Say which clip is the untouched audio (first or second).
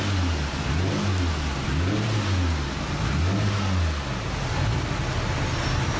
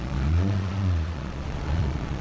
first